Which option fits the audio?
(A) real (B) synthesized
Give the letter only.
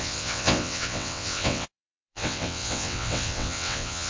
B